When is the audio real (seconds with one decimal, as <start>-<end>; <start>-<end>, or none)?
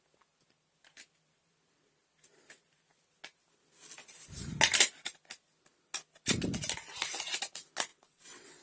0.0-7.9